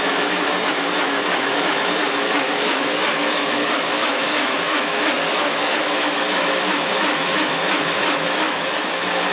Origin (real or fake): fake